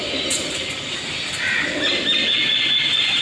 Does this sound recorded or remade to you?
recorded